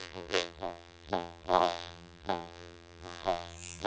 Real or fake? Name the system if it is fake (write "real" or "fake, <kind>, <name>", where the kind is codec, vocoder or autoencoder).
fake, vocoder, BigVGAN v2